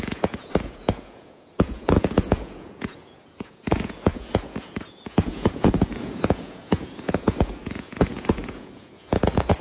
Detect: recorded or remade remade